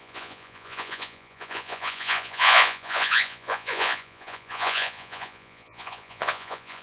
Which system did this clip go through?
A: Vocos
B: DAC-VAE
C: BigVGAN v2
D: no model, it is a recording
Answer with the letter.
A